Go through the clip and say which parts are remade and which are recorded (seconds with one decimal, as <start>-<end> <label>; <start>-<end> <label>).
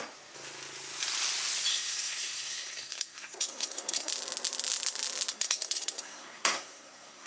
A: 0.0-1.7 recorded; 1.7-4.1 remade; 4.1-5.3 recorded; 5.3-7.3 remade